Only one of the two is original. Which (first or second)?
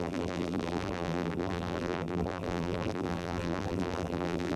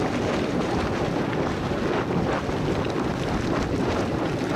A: second